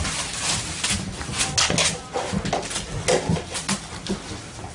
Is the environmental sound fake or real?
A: real